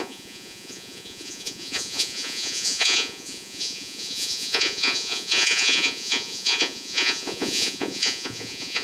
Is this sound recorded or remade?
remade